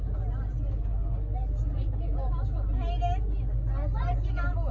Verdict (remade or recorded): recorded